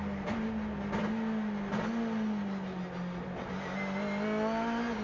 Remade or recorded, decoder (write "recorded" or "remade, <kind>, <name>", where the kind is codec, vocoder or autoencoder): recorded